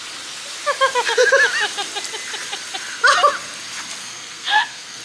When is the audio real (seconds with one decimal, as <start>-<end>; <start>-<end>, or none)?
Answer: 0.0-4.0